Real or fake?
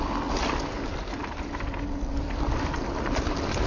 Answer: real